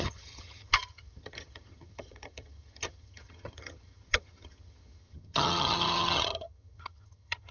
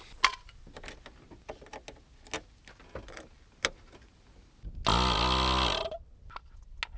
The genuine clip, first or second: second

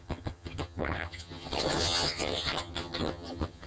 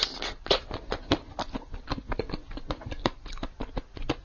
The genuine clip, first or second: second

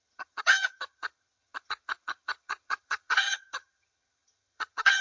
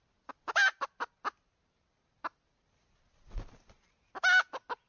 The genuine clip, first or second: second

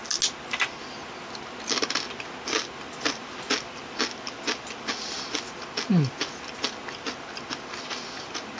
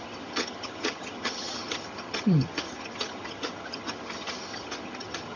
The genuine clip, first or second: first